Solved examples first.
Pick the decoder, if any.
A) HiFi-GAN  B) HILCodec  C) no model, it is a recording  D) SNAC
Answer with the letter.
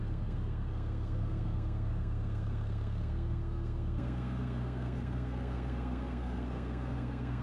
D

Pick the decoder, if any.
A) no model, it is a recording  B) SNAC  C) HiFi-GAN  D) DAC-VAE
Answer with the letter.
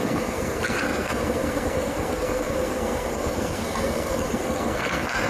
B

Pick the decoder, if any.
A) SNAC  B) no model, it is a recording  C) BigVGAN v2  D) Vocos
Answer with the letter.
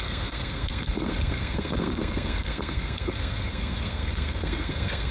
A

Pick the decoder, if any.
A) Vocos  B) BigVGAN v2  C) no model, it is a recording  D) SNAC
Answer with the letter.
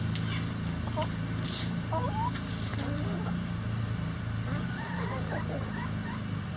C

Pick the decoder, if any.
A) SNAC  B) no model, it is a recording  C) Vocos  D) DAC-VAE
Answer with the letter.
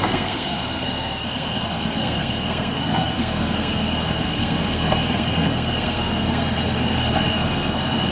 A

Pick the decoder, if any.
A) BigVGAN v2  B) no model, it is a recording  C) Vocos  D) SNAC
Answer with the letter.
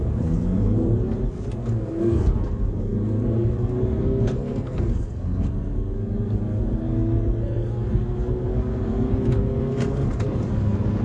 D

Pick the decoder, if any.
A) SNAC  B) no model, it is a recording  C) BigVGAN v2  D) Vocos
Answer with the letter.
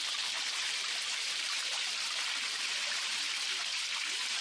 B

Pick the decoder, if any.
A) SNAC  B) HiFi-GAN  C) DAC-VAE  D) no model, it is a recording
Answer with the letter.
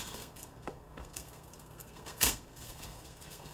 A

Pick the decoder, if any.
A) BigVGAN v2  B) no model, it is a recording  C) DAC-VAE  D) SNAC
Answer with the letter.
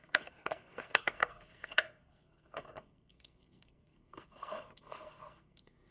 D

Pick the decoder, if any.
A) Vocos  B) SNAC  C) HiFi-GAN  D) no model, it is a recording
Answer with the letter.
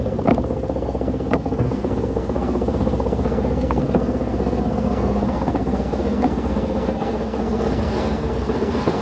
B